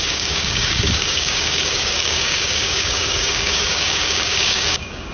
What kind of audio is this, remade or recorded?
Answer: remade